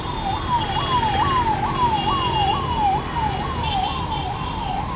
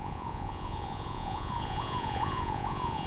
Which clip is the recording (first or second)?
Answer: first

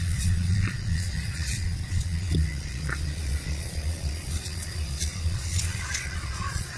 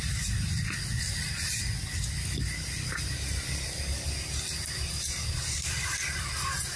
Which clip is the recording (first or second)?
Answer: second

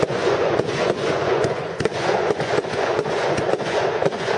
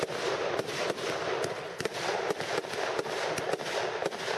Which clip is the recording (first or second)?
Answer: second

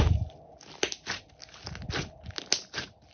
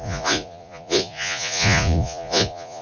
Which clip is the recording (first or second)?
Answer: first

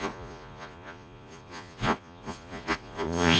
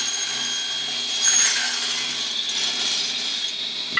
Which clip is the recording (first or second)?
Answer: second